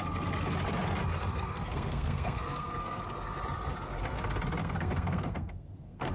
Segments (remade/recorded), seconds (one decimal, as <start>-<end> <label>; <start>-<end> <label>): 0.0-1.3 recorded; 1.3-3.0 remade; 3.0-4.6 recorded; 4.6-6.1 remade